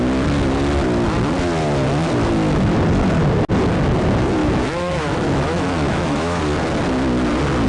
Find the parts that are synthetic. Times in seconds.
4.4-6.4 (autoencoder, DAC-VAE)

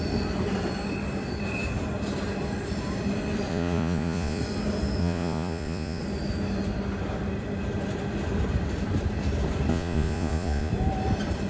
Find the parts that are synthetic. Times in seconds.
3.5-4.4 (vocoder, Vocos); 5.0-6.0; 9.7-10.7

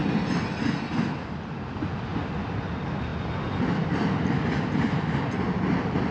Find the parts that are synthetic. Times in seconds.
none

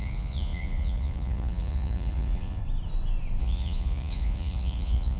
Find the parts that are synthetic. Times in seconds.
0.0-2.6 (vocoder, Vocos); 3.4-5.2

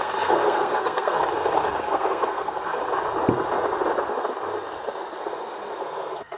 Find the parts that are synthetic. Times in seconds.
0.0-1.2 (codec, SNAC); 1.8-2.8; 5.8-6.4

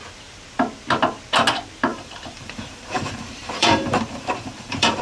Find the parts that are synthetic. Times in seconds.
1.9-5.0 (vocoder, BigVGAN v2)

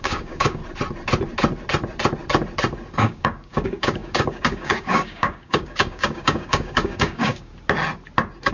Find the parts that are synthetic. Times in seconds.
0.0-0.6 (codec, DAC); 3.0-7.5

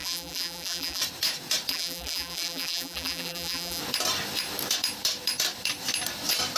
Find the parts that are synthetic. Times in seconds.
0.0-1.0 (vocoder, BigVGAN v2); 1.7-3.8